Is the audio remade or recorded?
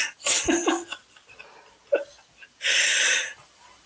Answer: recorded